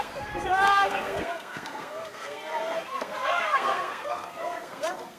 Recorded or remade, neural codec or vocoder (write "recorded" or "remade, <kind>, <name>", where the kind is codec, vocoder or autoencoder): remade, codec, SNAC